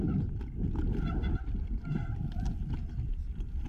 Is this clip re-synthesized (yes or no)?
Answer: no